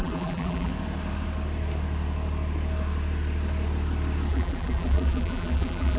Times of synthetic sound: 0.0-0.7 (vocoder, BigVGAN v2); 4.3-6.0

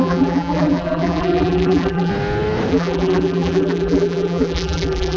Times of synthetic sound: 0.0-2.1 (vocoder, BigVGAN v2); 2.7-5.2

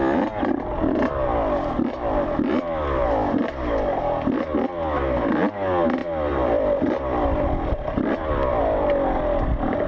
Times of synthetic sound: 6.0-8.6 (vocoder, BigVGAN v2)

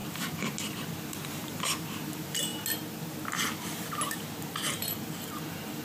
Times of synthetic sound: 1.3-2.5 (vocoder, BigVGAN v2); 4.5-5.8

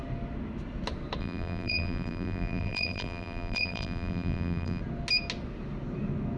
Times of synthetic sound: 1.2-4.8 (vocoder, BigVGAN v2)

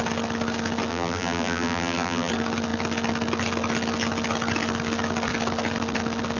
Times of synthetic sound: 0.9-2.3 (vocoder, BigVGAN v2)

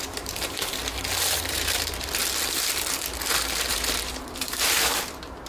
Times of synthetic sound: 0.0-0.8 (vocoder, BigVGAN v2); 1.5-2.2; 3.7-5.5

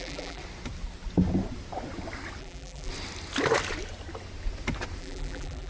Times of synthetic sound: 0.0-0.4 (vocoder, BigVGAN v2); 2.4-2.9; 5.0-5.7